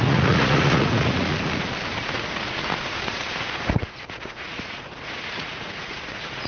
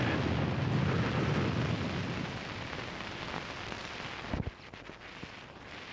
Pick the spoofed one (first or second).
first